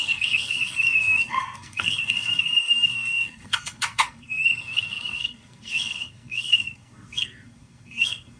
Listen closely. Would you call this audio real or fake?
fake